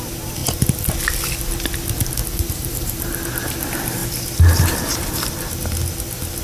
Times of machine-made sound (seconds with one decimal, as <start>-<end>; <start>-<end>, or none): 2.2-3.2